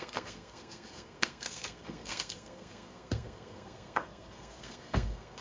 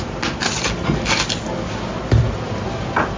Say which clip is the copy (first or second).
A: first